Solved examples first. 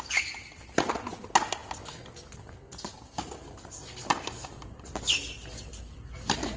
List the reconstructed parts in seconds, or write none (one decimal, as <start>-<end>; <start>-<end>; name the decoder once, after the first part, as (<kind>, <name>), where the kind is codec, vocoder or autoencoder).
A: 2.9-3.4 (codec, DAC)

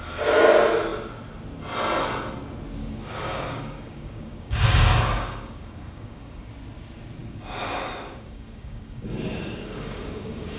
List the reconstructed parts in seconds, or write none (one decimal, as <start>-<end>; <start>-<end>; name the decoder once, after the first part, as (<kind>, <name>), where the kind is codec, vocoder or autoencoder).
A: 2.8-6.5 (codec, DAC); 7.2-10.6

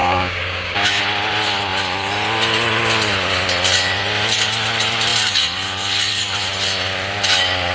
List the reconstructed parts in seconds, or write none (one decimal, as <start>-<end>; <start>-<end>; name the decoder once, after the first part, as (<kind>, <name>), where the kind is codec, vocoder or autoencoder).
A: 0.0-1.0 (codec, DAC)